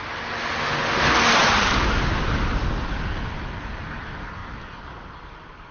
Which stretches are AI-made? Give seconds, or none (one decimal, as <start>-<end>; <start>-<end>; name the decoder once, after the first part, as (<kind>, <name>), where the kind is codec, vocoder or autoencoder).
none